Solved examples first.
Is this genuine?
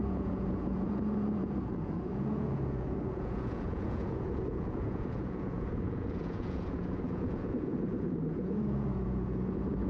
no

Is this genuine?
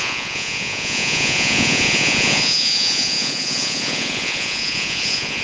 no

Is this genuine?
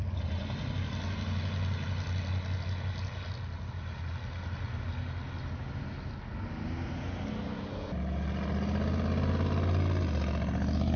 yes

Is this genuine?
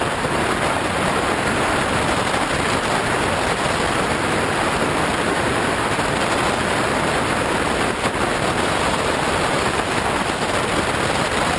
yes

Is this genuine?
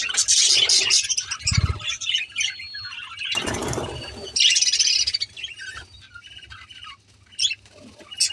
yes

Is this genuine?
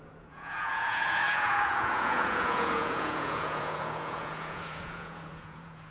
no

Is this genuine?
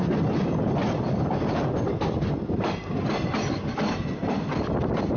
yes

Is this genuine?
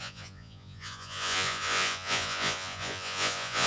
no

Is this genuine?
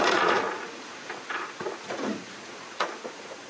no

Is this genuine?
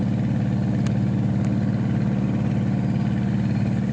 yes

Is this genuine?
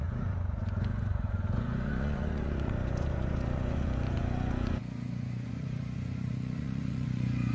no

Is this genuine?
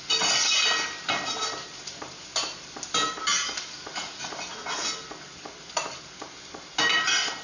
yes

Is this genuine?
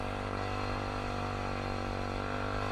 yes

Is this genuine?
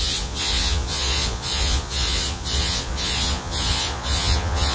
no